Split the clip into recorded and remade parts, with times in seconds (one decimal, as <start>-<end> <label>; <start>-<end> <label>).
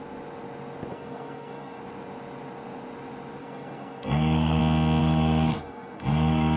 0.0-0.9 recorded; 0.9-1.8 remade; 1.8-3.4 recorded; 3.4-4.6 remade; 4.6-5.0 recorded; 5.0-6.6 remade